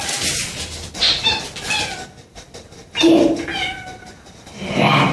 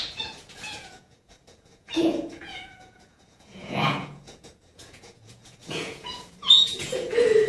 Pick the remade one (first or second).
second